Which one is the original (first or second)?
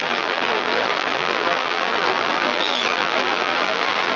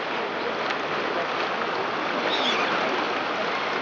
second